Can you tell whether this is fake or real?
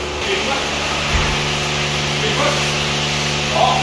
real